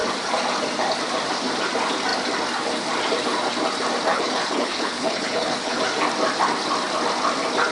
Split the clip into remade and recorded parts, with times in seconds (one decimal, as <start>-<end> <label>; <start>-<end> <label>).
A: 0.0-4.1 recorded; 4.1-5.8 remade; 5.8-7.7 recorded